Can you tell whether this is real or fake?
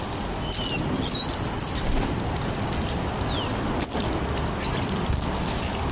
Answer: real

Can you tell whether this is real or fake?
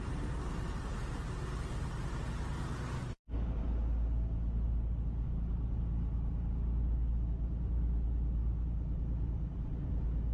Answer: real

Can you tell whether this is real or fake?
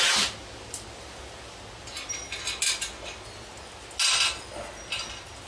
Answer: real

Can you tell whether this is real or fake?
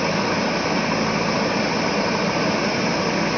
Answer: real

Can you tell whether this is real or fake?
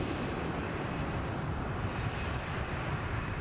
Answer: fake